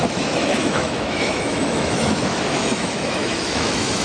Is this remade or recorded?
remade